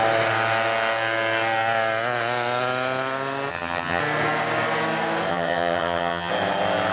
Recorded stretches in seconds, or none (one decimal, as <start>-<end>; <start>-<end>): 0.0-3.5; 4.0-5.3; 6.3-6.9